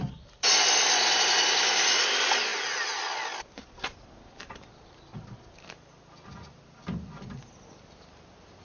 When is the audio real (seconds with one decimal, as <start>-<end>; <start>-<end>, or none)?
2.5-4.4